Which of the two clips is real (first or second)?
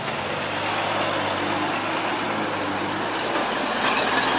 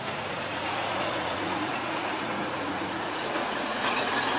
first